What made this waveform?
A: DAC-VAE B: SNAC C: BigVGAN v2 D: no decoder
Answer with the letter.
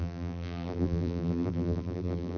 C